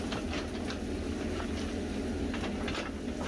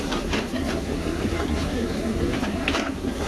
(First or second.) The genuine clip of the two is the first